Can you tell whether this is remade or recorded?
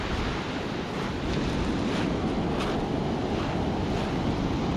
recorded